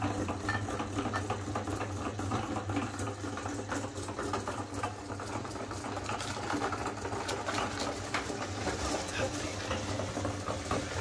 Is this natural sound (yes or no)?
yes